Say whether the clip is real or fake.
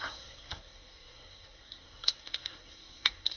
fake